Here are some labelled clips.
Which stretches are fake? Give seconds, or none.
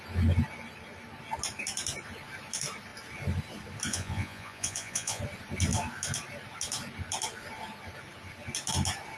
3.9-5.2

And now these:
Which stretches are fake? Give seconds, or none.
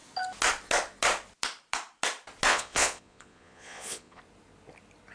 2.5-4.2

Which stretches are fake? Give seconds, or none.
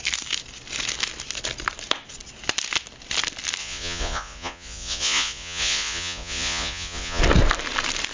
3.6-7.2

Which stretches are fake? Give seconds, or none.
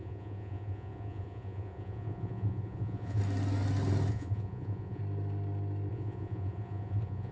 0.0-3.2; 4.1-5.0; 5.9-7.3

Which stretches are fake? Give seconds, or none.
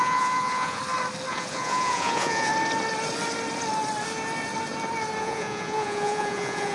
0.0-0.8; 1.3-2.5; 5.2-6.7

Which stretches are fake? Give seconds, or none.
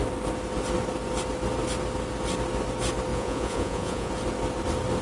3.1-4.1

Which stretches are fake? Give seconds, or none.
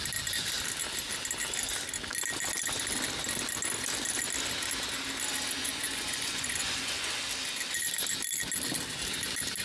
5.6-7.1